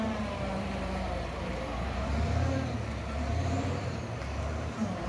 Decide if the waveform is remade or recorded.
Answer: remade